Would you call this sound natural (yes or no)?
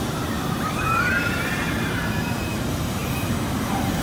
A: no